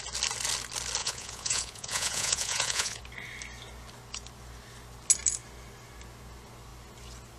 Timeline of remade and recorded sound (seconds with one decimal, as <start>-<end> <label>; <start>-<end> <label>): 0.0-1.0 recorded; 1.0-3.0 remade; 3.0-7.4 recorded